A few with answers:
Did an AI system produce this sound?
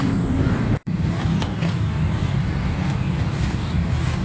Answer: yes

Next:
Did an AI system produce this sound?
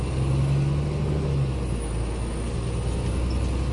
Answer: no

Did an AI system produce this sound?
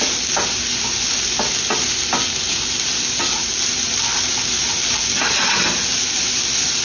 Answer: no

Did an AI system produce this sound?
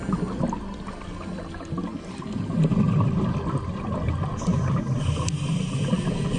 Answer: no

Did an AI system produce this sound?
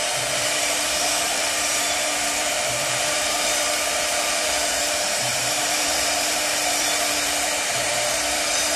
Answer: yes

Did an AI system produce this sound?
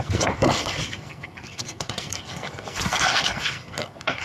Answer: yes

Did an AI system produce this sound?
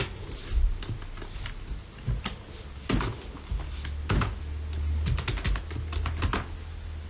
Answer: no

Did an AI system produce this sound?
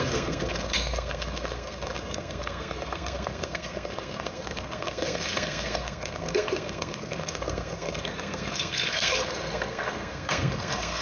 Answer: yes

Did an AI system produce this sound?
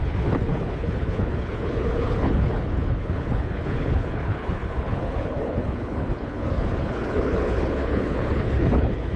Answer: yes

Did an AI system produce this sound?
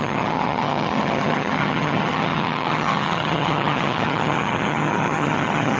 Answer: yes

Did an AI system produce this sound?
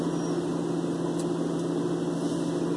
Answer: no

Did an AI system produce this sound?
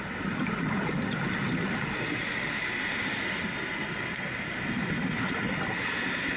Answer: no